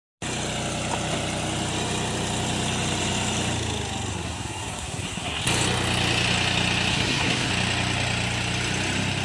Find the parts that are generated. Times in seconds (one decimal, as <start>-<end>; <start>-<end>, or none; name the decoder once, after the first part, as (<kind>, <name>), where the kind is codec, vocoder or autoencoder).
4.1-5.4 (codec, SNAC); 6.9-7.5